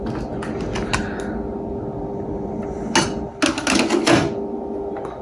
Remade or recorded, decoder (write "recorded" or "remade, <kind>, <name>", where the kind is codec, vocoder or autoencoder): recorded